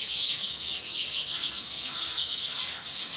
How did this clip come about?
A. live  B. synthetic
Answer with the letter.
B